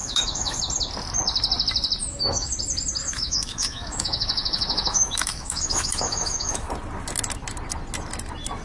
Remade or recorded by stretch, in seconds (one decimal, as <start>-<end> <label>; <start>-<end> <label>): 0.0-0.6 remade; 0.6-2.0 recorded; 2.0-2.5 remade; 2.5-3.0 recorded; 3.0-6.7 remade; 6.7-8.6 recorded